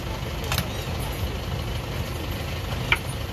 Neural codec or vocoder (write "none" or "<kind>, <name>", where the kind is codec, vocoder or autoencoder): none